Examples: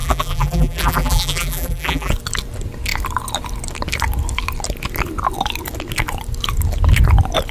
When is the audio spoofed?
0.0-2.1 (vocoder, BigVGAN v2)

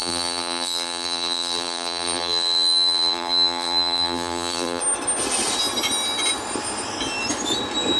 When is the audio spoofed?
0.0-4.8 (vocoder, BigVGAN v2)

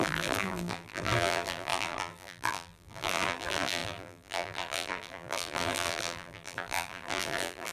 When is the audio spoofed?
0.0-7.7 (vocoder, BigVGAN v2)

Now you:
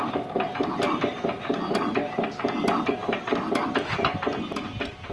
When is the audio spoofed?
0.0-3.0 (vocoder, BigVGAN v2); 4.6-5.1

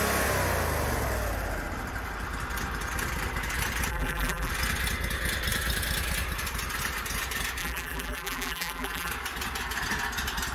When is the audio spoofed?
3.9-4.5 (vocoder, BigVGAN v2); 7.6-9.1

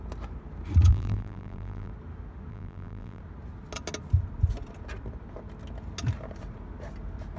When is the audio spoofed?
0.9-1.9 (vocoder, BigVGAN v2); 2.5-3.2

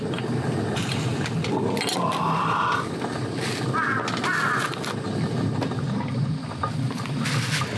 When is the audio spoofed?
none

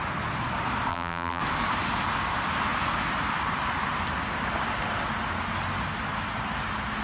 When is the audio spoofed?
0.9-1.4 (vocoder, BigVGAN v2)